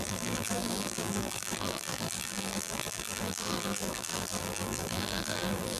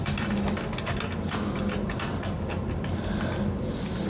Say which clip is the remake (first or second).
first